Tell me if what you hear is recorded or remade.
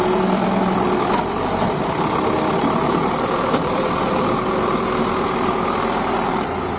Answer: remade